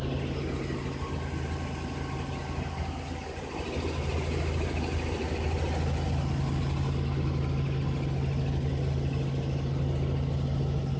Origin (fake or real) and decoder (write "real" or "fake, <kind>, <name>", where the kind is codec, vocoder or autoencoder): real